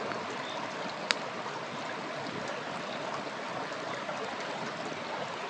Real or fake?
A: real